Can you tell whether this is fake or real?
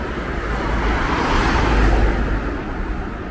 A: real